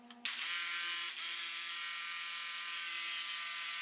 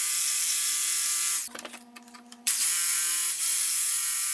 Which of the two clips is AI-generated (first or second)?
second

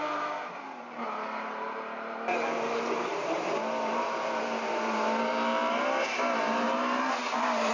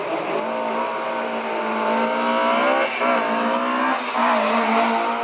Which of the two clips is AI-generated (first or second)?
first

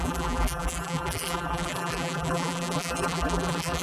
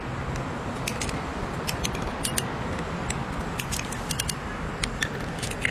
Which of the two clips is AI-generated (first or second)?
first